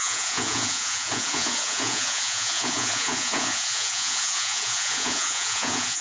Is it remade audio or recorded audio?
remade